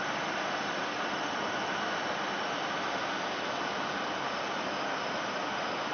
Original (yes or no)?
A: yes